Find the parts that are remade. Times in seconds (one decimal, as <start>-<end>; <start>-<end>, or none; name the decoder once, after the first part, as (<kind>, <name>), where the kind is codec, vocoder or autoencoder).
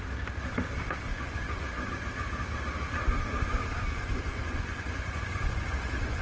1.1-2.0 (vocoder, Vocos); 3.9-6.2